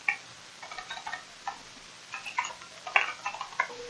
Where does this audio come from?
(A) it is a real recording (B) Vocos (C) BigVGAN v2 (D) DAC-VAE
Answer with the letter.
A